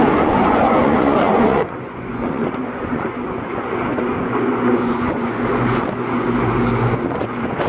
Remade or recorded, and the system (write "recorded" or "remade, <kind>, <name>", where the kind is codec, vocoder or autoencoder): remade, vocoder, Vocos